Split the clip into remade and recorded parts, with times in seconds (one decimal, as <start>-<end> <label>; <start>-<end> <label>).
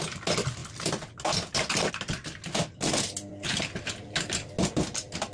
0.0-5.3 recorded